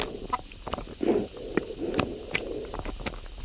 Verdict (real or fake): real